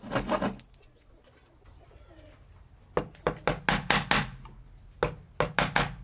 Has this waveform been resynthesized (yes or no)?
no